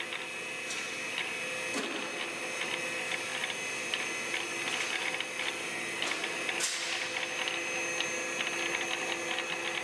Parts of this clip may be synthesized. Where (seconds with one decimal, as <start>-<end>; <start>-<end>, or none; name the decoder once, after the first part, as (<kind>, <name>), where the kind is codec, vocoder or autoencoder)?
none